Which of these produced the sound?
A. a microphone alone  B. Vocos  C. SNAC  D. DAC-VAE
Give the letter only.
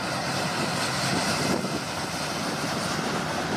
A